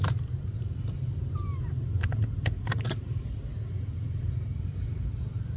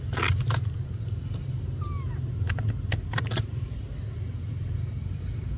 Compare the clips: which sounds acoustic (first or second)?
second